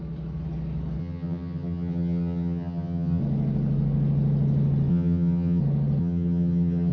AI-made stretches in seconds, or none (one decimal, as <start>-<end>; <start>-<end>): 1.0-3.2; 4.9-5.6; 6.0-6.9